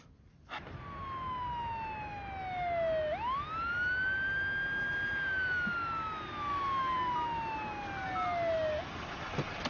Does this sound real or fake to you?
real